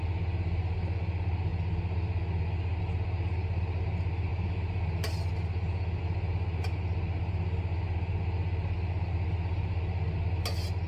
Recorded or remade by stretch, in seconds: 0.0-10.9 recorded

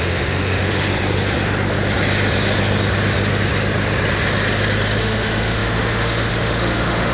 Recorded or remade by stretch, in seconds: 0.0-0.9 remade; 0.9-5.0 recorded; 5.0-7.1 remade

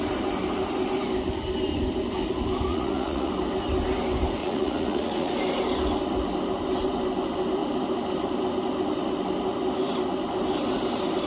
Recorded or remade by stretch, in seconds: 0.0-2.7 recorded; 2.7-3.3 remade; 3.3-4.4 recorded; 4.4-5.3 remade; 5.3-11.3 recorded

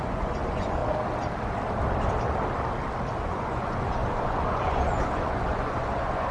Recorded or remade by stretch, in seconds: 0.0-0.8 remade; 0.8-3.2 recorded; 3.2-6.3 remade

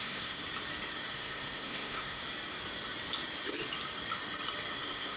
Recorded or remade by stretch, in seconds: 0.0-0.4 remade; 0.4-1.1 recorded; 1.1-2.2 remade; 2.2-4.8 recorded; 4.8-5.2 remade

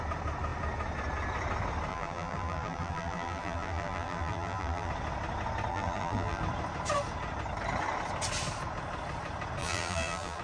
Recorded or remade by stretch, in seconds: 0.0-1.9 recorded; 1.9-4.9 remade; 4.9-5.7 recorded; 5.7-6.4 remade; 6.4-9.6 recorded; 9.6-10.4 remade

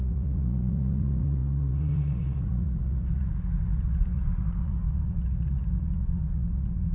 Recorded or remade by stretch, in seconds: 0.0-6.9 remade